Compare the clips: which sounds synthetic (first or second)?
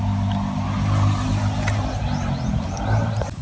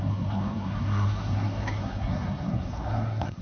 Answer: second